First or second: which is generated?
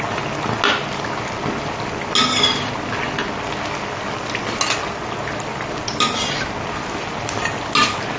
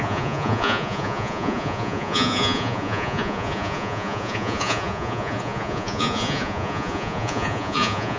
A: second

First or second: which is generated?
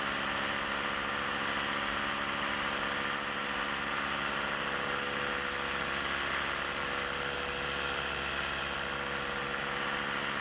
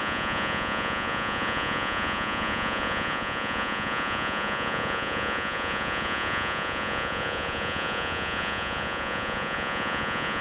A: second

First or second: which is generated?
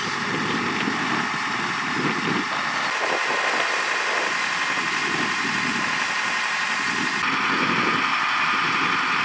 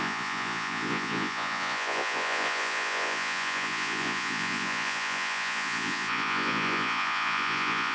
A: second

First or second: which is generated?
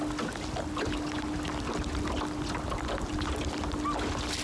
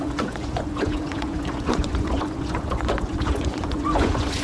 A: second